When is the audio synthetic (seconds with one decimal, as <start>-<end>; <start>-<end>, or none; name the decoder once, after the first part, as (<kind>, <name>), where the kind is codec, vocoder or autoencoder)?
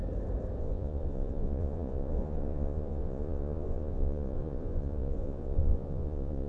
0.6-6.5 (vocoder, Vocos)